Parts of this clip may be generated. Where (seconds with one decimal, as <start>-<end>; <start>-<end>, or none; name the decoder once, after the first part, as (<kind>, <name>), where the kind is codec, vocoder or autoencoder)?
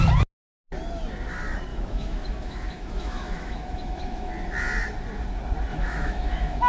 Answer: 1.7-4.3 (autoencoder, DAC-VAE); 5.7-6.7